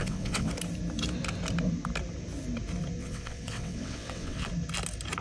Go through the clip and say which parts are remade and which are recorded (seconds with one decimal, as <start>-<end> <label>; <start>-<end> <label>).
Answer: 0.0-0.5 remade; 0.5-3.0 recorded; 3.0-4.5 remade; 4.5-5.2 recorded